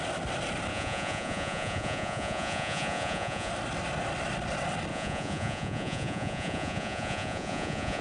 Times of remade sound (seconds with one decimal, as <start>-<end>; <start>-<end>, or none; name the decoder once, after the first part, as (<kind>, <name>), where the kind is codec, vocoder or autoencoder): 0.7-3.5 (vocoder, Vocos); 4.9-8.0